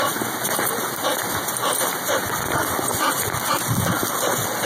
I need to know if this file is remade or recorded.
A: recorded